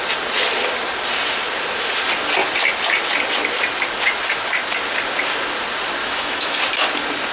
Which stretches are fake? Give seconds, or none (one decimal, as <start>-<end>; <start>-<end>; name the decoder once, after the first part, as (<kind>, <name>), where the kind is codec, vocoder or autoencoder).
6.0-6.6 (autoencoder, DAC-VAE)